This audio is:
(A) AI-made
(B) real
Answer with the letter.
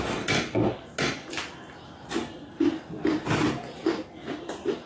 B